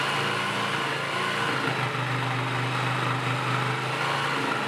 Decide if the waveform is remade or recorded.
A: recorded